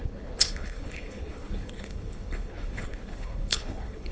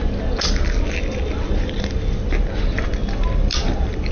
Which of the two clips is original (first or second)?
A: second